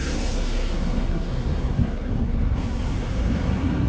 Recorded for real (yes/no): no